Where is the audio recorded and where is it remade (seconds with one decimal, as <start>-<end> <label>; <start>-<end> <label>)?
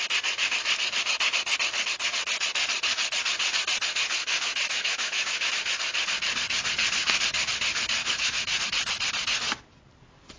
0.0-4.2 recorded; 4.2-5.5 remade; 5.5-8.0 recorded; 8.0-8.6 remade; 8.6-10.4 recorded